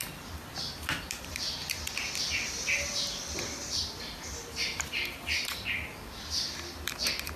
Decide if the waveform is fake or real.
fake